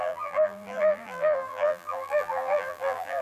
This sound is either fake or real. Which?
fake